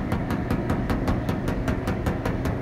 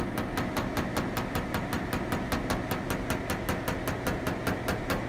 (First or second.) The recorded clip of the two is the second